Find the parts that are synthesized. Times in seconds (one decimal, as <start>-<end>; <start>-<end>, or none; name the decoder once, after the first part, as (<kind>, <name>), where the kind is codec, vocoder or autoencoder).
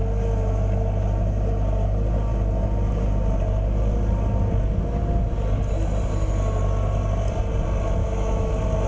8.0-8.5 (autoencoder, DAC-VAE)